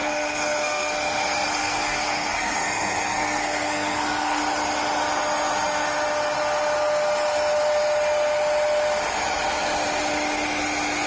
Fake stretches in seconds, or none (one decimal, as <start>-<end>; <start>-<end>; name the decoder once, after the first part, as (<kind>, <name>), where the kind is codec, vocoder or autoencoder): 0.0-4.4 (codec, SNAC)